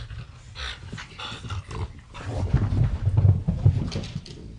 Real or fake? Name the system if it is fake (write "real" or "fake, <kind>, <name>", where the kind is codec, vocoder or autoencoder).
real